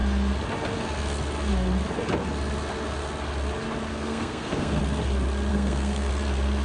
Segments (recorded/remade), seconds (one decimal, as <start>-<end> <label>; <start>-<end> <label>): 0.0-3.9 recorded; 3.9-4.8 remade; 4.8-5.5 recorded; 5.5-6.1 remade; 6.1-6.6 recorded